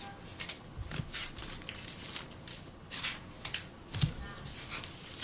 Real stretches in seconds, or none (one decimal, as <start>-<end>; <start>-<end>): 0.0-0.5; 1.1-2.5; 3.0-5.2